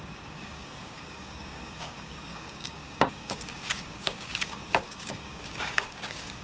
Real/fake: fake